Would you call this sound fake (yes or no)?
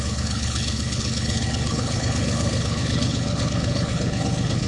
yes